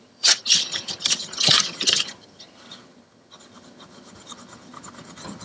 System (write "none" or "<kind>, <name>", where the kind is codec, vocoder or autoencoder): vocoder, HiFi-GAN